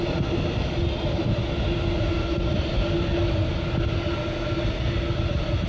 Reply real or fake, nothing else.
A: real